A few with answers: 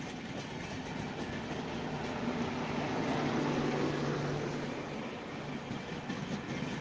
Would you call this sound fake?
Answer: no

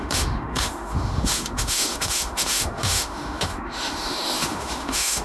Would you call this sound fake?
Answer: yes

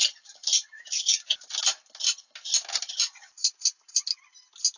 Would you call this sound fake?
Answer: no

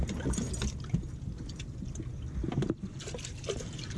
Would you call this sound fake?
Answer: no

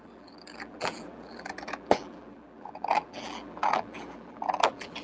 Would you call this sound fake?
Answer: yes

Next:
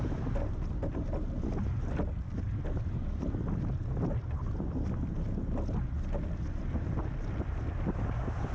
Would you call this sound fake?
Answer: no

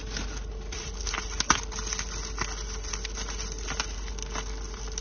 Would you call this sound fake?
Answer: no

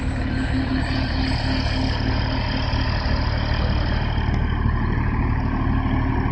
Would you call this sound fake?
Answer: no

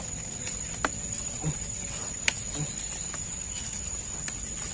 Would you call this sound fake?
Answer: no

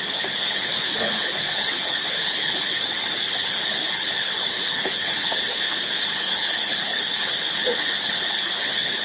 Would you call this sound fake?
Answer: yes